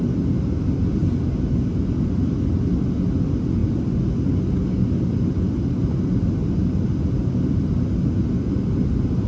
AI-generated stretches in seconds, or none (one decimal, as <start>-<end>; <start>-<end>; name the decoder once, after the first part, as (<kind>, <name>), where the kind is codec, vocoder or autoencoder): none